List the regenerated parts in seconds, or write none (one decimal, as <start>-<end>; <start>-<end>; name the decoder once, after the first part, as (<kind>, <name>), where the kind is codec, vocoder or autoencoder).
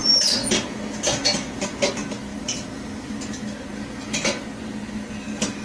2.3-3.1 (vocoder, BigVGAN v2)